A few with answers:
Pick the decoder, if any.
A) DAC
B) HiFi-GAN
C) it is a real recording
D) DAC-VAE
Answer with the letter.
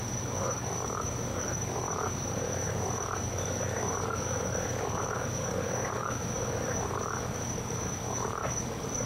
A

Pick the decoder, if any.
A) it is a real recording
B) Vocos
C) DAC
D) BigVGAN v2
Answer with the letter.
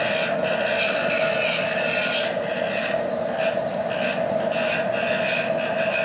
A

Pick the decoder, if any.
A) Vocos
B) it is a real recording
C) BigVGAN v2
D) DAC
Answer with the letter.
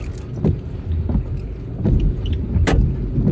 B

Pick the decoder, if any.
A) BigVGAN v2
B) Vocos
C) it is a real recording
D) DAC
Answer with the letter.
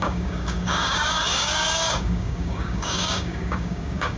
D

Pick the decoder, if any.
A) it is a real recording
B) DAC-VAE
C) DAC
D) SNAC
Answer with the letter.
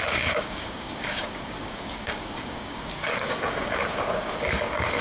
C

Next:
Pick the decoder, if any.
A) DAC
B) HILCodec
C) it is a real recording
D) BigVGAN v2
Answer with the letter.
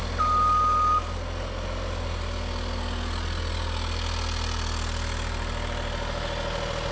C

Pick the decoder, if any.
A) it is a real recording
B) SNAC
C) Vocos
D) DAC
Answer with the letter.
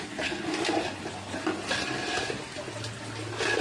A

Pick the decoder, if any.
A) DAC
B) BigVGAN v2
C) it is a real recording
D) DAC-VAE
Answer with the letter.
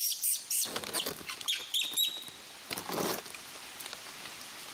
C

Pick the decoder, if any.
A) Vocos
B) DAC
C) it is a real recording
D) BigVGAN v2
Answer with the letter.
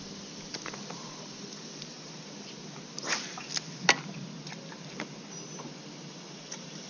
C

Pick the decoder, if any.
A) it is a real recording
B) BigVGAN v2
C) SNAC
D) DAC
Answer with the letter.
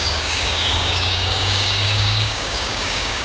D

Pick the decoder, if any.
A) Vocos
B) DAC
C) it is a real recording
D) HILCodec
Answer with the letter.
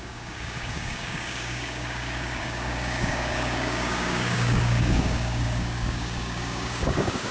B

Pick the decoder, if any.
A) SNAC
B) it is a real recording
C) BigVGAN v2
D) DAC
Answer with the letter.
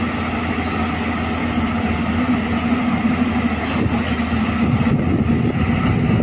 B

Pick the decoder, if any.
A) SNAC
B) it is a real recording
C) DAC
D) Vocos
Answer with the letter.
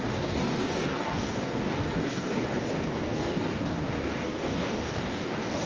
C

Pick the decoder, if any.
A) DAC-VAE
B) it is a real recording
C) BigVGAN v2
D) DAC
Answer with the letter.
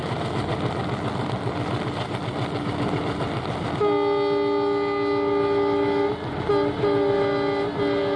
B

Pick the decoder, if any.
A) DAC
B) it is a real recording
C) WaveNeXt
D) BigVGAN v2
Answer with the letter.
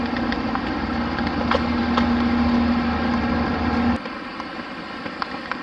B